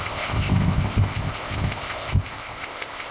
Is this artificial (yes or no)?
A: yes